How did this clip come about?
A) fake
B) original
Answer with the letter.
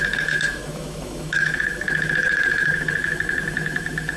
A